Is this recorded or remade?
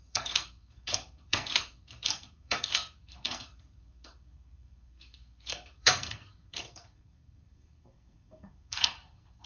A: remade